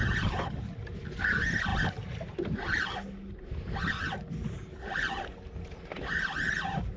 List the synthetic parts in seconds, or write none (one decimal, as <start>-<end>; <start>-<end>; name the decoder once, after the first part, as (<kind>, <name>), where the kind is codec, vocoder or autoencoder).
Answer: none